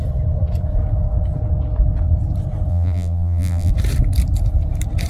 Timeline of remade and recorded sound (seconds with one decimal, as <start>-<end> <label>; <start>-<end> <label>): 0.0-2.7 recorded; 2.7-3.7 remade; 3.7-5.1 recorded